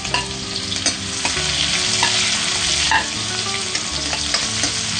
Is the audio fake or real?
real